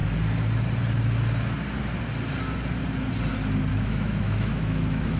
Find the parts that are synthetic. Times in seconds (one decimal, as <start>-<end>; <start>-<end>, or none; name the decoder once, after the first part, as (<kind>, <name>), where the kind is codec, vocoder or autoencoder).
3.7-5.2 (autoencoder, DAC-VAE)